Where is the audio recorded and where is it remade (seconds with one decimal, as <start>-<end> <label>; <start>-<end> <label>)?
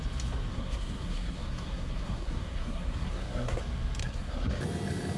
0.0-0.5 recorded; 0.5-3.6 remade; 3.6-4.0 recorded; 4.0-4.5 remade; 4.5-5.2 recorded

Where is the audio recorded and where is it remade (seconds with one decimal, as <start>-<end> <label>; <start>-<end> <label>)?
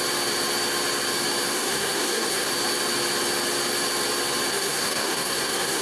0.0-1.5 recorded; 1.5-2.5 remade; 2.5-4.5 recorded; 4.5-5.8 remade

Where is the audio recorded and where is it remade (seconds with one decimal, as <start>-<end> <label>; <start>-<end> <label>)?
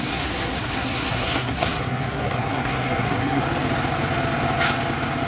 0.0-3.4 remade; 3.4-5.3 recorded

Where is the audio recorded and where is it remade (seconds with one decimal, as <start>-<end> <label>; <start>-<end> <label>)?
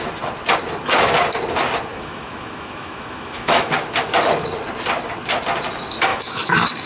0.0-1.9 recorded; 1.9-3.7 remade; 3.7-6.1 recorded; 6.1-6.9 remade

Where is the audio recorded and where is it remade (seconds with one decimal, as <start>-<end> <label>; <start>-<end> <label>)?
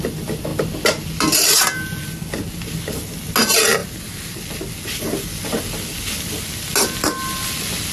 0.0-7.9 recorded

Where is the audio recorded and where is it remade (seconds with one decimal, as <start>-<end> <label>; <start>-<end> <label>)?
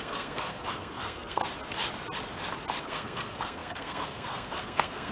0.0-1.4 remade; 1.4-2.8 recorded; 2.8-5.1 remade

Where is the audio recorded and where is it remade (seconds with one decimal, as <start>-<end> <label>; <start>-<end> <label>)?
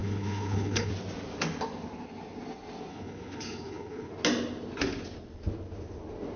0.0-0.9 remade; 0.9-2.9 recorded; 2.9-4.1 remade; 4.1-6.4 recorded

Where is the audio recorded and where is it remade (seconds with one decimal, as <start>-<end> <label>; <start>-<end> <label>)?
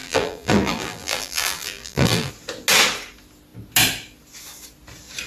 0.0-2.3 remade; 2.3-5.3 recorded